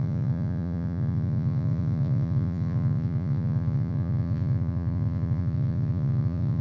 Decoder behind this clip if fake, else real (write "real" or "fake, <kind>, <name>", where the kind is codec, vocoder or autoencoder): fake, vocoder, Vocos